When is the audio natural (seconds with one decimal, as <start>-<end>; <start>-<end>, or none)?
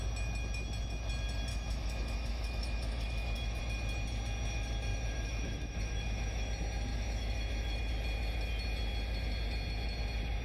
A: 0.0-1.5; 3.6-4.9; 6.5-6.9; 7.9-10.4